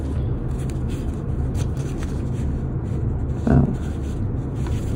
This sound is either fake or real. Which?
real